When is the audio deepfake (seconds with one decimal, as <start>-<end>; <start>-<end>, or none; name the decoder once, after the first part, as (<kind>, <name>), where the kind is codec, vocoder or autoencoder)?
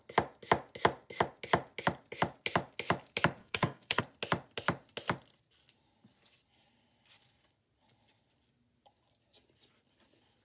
3.4-4.0 (codec, DAC)